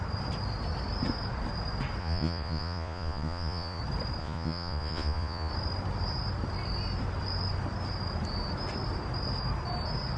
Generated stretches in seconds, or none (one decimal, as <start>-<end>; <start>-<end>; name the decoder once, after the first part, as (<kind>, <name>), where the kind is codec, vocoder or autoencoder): 2.0-3.8 (vocoder, Vocos); 4.2-5.5